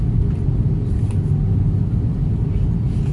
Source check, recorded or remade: recorded